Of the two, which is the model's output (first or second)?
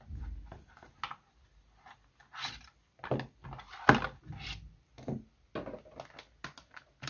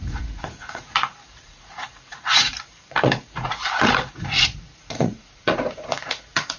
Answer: second